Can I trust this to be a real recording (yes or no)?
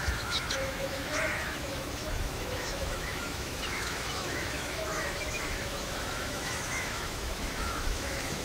no